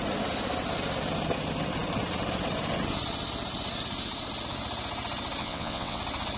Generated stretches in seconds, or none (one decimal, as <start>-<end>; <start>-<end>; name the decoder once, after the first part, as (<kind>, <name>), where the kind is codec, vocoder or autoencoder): 5.4-6.0 (vocoder, WaveNeXt)